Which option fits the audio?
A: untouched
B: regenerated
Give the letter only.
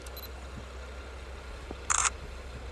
A